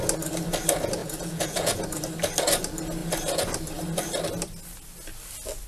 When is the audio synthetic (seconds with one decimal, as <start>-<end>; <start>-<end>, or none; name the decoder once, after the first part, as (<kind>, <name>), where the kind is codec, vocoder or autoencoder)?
1.0-1.8 (vocoder, Vocos)